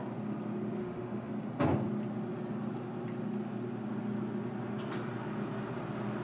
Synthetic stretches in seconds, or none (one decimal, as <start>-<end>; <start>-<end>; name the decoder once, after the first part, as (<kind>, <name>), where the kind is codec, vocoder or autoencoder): 0.8-1.3 (autoencoder, DAC-VAE)